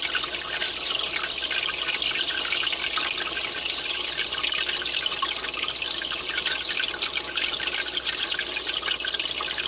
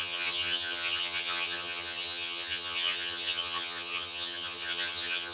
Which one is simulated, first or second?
second